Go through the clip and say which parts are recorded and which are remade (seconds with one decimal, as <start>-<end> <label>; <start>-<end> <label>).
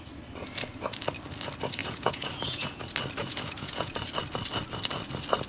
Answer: 0.0-1.8 recorded; 1.8-2.8 remade; 2.8-3.2 recorded; 3.2-3.9 remade; 3.9-5.5 recorded